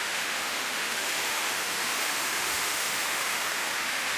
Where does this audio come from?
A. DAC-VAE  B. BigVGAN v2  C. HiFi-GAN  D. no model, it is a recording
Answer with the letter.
A